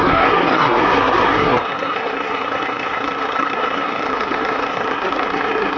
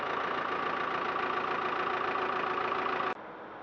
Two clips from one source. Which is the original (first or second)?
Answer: second